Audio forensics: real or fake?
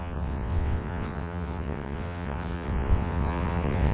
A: fake